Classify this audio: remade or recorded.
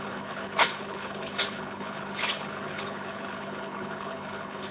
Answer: remade